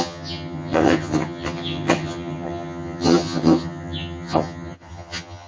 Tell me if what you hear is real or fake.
fake